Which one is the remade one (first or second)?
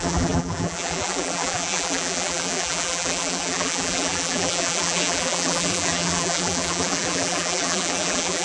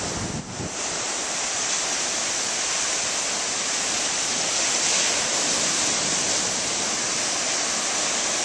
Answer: first